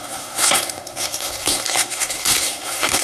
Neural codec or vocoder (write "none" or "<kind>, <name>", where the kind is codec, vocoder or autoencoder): codec, SNAC